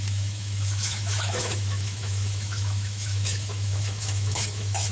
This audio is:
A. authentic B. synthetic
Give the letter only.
B